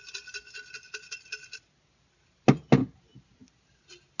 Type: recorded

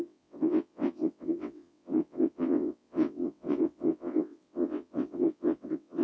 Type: remade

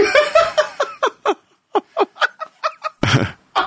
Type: recorded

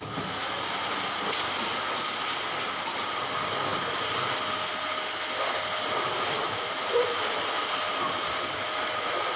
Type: recorded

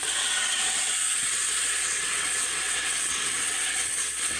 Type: remade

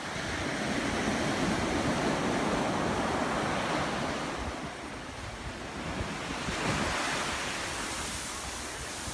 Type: recorded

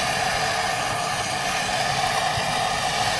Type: recorded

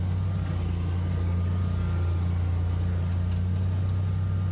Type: recorded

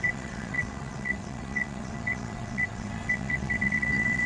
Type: remade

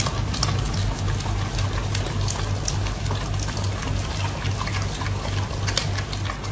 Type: recorded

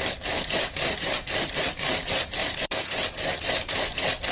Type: recorded